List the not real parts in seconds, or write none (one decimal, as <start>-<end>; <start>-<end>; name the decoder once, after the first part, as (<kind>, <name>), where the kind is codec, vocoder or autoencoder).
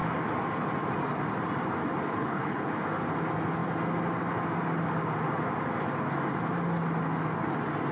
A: 2.1-2.7 (codec, HILCodec)